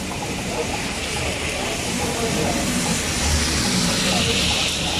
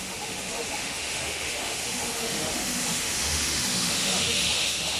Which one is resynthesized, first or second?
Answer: second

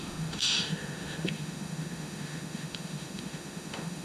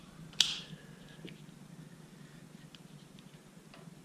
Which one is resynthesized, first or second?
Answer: first